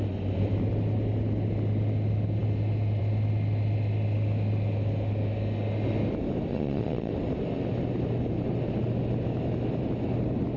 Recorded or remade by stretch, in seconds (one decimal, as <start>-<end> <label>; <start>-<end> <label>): 0.0-6.5 recorded; 6.5-7.1 remade; 7.1-10.6 recorded